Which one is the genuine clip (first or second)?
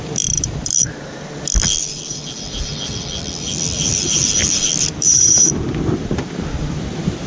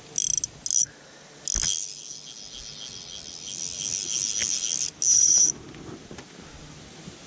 second